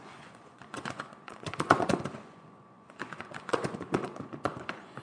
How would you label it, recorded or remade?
remade